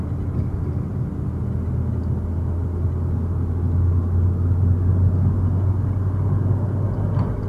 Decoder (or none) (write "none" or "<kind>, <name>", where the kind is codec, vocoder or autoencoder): none